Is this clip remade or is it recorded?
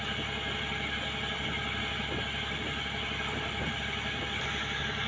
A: recorded